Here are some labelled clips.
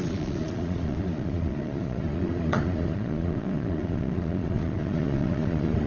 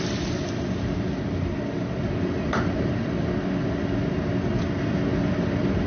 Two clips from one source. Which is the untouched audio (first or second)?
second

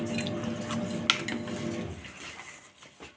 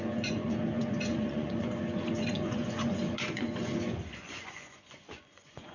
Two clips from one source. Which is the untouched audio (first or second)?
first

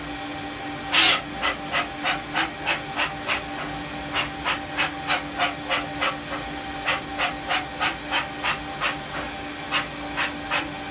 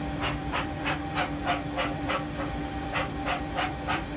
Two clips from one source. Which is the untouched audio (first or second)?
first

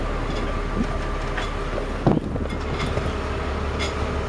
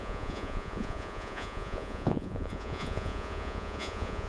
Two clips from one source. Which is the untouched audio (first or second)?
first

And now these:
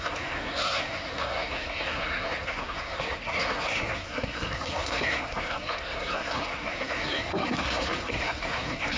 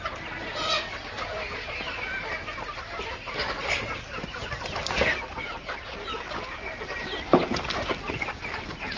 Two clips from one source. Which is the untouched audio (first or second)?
second